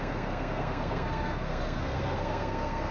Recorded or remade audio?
remade